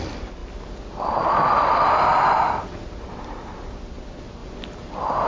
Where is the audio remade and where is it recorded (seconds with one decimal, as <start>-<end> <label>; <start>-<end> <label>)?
0.0-5.3 recorded